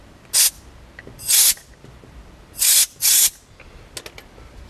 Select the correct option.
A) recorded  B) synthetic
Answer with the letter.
A